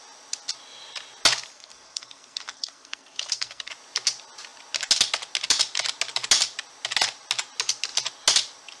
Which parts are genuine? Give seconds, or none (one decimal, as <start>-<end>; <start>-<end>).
0.0-1.5; 3.7-8.8